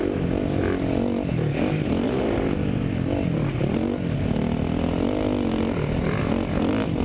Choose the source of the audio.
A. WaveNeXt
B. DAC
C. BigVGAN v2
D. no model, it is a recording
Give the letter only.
D